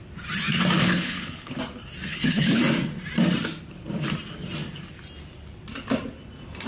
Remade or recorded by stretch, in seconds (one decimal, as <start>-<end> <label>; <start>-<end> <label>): 0.0-0.8 recorded; 0.8-1.6 remade; 1.6-2.1 recorded; 2.1-2.6 remade; 2.6-6.7 recorded